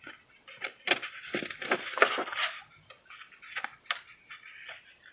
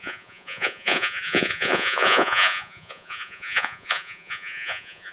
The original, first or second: first